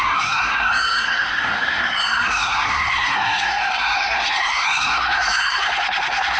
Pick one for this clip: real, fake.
fake